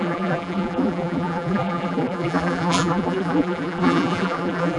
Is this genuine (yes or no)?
no